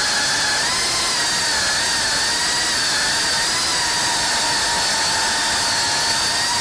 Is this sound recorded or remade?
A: recorded